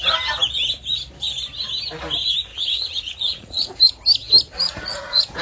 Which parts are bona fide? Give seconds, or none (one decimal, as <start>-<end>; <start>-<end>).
0.0-2.5; 3.7-4.5